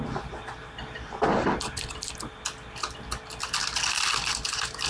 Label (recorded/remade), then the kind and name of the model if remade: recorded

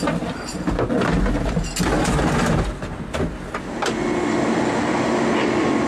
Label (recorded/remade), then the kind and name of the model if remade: recorded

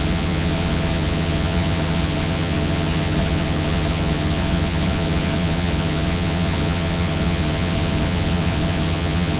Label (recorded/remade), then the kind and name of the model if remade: remade, vocoder, HiFi-GAN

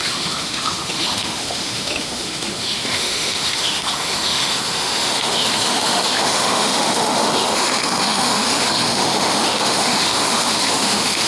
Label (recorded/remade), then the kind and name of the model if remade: remade, autoencoder, DAC-VAE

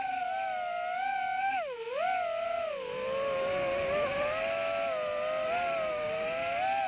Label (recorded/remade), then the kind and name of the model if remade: recorded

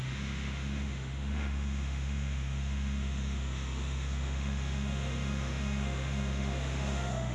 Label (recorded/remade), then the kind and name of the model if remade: remade, autoencoder, DAC-VAE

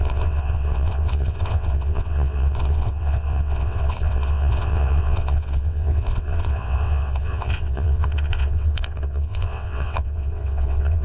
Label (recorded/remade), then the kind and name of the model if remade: remade, vocoder, WaveNeXt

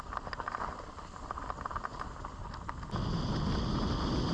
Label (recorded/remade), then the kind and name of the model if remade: recorded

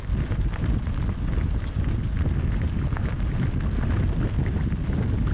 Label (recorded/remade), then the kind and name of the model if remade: recorded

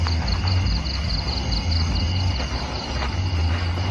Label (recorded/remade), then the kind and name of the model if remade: recorded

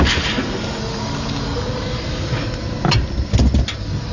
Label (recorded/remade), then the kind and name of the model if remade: recorded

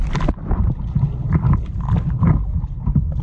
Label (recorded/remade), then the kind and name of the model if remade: recorded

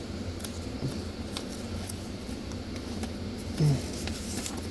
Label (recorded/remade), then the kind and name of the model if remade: recorded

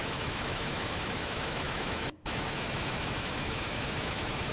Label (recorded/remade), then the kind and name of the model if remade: remade, autoencoder, DAC-VAE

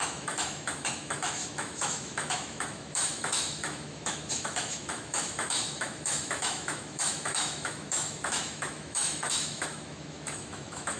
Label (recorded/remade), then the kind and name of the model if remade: remade, autoencoder, DAC-VAE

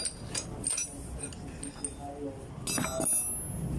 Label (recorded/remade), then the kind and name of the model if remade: recorded